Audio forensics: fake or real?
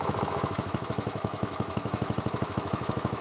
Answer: fake